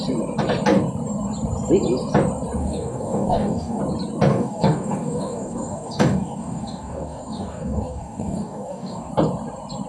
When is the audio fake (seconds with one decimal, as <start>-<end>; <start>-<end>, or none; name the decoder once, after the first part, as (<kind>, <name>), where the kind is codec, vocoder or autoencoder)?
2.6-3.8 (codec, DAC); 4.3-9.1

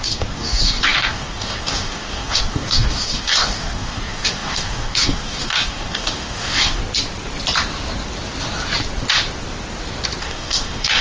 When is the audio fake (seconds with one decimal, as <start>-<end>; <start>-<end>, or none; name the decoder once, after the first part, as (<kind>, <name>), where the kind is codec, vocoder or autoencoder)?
0.0-6.8 (codec, DAC); 10.2-11.0

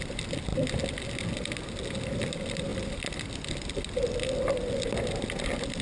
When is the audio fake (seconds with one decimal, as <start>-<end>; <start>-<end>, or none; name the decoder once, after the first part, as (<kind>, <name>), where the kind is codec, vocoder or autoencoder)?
none